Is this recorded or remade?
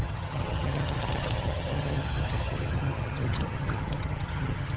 remade